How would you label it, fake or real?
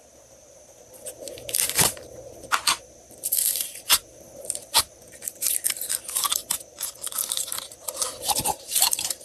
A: fake